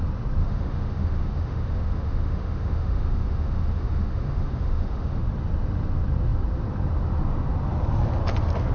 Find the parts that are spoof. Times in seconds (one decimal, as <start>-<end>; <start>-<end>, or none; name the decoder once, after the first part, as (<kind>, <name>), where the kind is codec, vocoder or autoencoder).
0.4-5.2 (autoencoder, DAC-VAE)